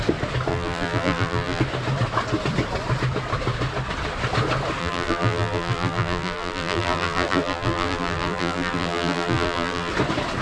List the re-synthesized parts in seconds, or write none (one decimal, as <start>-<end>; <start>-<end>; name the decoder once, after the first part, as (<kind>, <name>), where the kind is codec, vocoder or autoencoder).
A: 0.5-1.6 (vocoder, BigVGAN v2); 4.8-9.9